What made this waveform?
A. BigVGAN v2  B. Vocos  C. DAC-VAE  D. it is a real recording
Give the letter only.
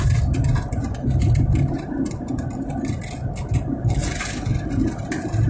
D